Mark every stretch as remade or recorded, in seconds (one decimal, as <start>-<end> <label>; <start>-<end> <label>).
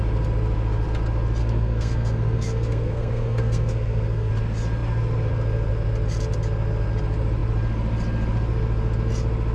0.0-1.4 recorded; 1.4-4.3 remade; 4.3-9.5 recorded